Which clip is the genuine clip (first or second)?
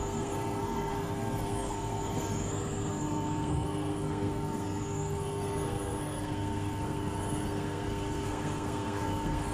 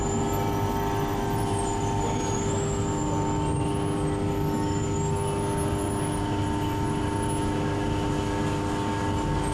second